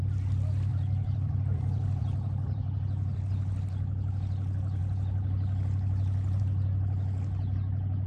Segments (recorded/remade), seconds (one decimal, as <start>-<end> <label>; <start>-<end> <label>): 0.0-0.7 recorded; 0.7-3.3 remade; 3.3-8.1 recorded